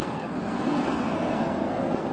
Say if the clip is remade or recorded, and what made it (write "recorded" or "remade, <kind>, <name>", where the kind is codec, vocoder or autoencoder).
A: remade, codec, SNAC